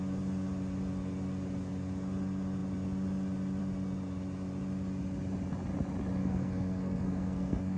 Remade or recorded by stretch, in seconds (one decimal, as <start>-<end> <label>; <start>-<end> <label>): 0.0-6.2 recorded; 6.2-7.8 remade